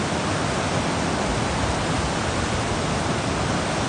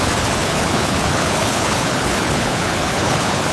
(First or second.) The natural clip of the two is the first